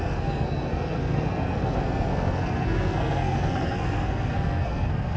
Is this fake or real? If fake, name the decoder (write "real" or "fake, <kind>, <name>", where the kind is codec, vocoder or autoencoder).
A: fake, codec, SNAC